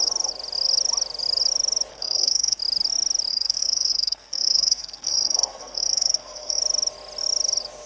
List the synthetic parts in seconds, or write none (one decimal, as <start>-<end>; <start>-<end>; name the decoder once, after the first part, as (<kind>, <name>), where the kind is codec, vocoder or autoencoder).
1.9-2.6 (codec, SNAC); 3.3-6.6